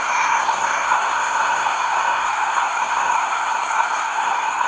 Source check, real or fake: fake